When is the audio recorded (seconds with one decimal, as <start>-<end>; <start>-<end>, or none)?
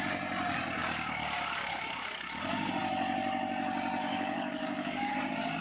0.0-0.8; 2.7-4.0; 5.1-5.6